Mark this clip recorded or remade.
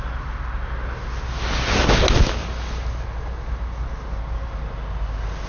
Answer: recorded